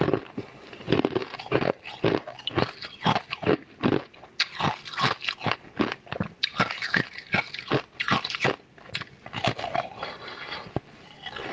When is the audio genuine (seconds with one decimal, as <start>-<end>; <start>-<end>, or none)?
0.0-11.5